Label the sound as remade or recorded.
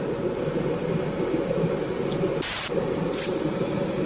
remade